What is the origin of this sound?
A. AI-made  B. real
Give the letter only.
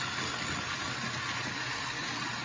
B